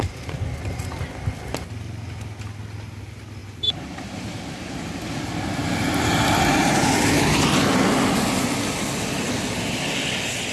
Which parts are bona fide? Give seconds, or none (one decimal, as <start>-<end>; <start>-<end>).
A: 0.0-3.4; 4.1-10.5